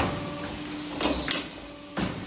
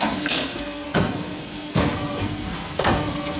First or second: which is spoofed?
second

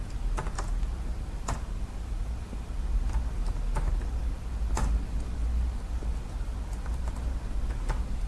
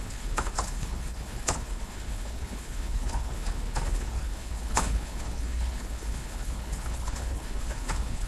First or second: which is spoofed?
second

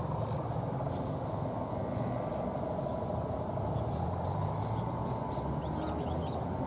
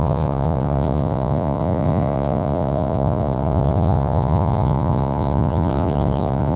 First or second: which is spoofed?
second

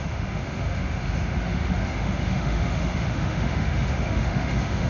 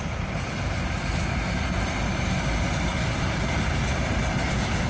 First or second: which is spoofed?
first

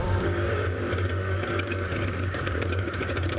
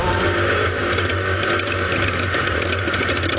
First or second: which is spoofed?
first